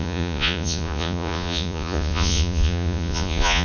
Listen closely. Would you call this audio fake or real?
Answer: fake